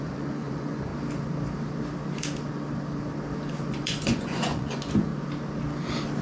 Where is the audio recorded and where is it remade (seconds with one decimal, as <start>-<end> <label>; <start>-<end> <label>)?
0.0-0.9 remade; 0.9-3.7 recorded; 3.7-5.1 remade; 5.1-6.2 recorded